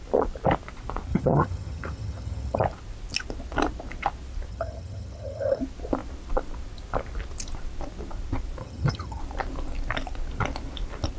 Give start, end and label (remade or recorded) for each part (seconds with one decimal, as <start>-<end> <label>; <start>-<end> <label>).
0.0-1.1 recorded; 1.1-2.6 remade; 2.6-4.5 recorded; 4.5-5.6 remade; 5.6-8.6 recorded; 8.6-9.2 remade; 9.2-11.2 recorded